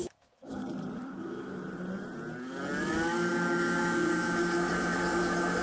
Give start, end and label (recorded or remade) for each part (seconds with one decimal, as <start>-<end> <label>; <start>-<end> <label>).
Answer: 0.0-0.6 remade; 0.6-1.1 recorded; 1.1-1.6 remade; 1.6-2.8 recorded; 2.8-5.6 remade